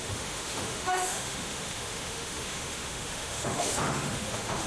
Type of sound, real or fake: fake